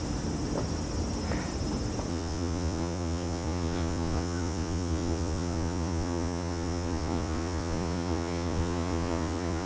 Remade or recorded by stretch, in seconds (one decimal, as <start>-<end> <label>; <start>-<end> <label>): 0.0-2.1 recorded; 2.1-9.7 remade